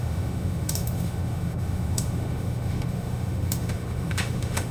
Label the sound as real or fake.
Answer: fake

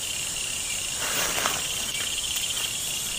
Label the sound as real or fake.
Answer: real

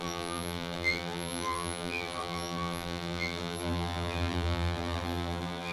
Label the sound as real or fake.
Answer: fake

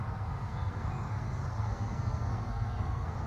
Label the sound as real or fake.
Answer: fake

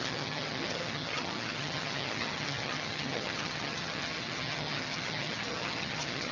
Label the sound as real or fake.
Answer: fake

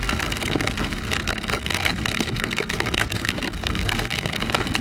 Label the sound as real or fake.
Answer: fake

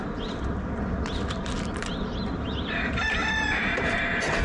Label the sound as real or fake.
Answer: real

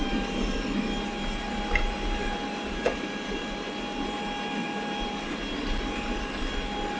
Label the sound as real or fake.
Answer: real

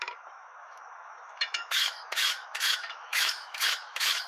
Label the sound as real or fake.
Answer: fake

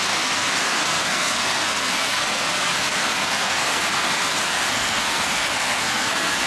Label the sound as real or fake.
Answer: fake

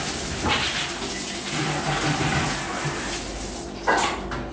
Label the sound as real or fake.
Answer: real